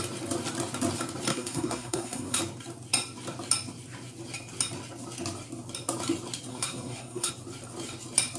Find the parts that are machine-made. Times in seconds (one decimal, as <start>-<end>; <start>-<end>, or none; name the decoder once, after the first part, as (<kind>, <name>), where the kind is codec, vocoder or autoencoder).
1.3-2.4 (codec, SNAC); 6.5-7.3